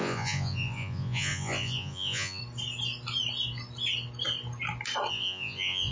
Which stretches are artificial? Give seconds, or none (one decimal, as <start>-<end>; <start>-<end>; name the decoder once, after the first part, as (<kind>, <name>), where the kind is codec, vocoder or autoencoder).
0.0-2.4 (vocoder, Vocos); 5.1-5.9